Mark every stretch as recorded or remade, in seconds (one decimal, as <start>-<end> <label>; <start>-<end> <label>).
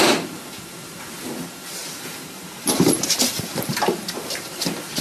0.0-1.8 recorded; 1.8-3.7 remade; 3.7-5.0 recorded